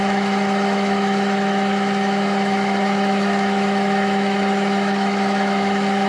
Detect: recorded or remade remade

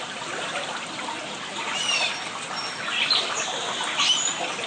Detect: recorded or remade recorded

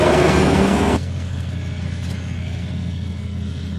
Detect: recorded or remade remade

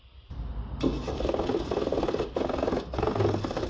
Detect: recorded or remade recorded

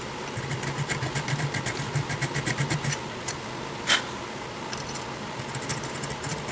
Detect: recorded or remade remade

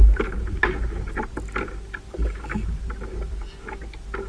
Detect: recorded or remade recorded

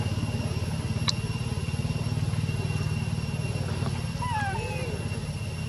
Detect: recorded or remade recorded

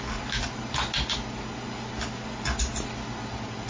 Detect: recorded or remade recorded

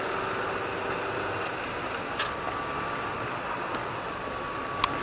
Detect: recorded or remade recorded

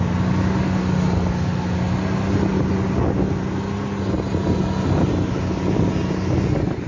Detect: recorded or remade recorded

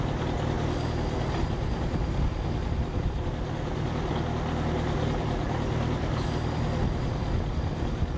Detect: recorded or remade recorded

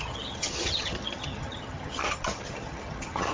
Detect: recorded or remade remade